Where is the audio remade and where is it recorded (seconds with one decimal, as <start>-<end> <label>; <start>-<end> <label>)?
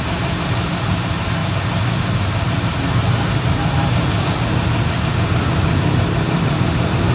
0.0-7.1 recorded